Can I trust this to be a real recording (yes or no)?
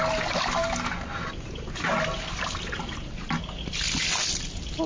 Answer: yes